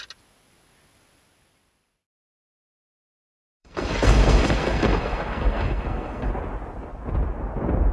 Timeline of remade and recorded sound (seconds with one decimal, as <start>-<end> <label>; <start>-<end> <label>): 0.0-3.5 recorded; 3.5-6.3 remade; 6.3-7.9 recorded